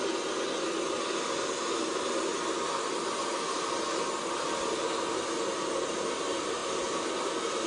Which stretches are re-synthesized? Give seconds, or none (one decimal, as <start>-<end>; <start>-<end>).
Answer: none